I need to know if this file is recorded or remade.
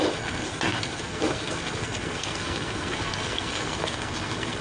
remade